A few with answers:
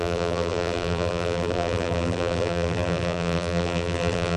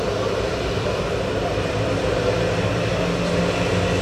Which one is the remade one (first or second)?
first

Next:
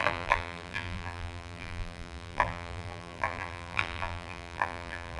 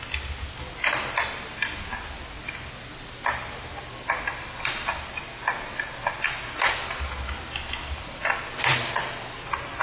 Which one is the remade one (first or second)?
first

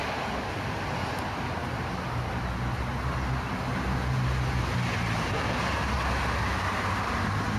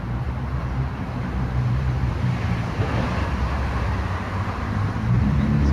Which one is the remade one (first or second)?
second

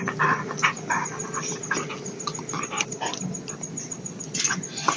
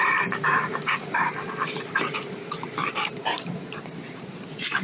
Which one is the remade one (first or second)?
second